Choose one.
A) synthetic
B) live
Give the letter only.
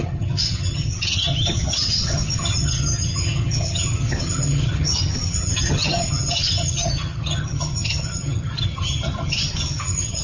A